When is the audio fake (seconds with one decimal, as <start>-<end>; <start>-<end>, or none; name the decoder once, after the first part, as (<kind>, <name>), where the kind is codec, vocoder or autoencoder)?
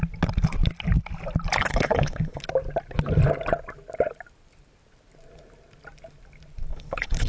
1.6-2.4 (codec, HILCodec); 6.7-7.3